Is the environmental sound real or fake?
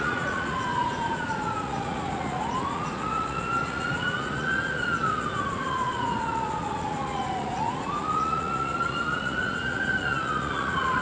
fake